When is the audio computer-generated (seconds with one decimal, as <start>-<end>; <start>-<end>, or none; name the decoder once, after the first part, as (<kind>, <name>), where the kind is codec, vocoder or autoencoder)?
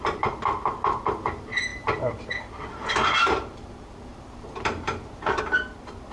1.7-5.4 (vocoder, BigVGAN v2)